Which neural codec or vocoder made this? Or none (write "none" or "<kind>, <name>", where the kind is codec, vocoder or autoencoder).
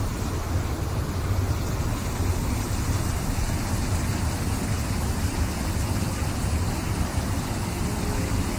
none